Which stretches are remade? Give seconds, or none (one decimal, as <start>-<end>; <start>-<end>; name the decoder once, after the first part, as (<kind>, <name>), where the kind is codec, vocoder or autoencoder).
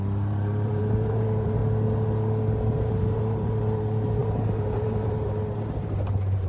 0.0-1.6 (vocoder, BigVGAN v2); 2.7-6.5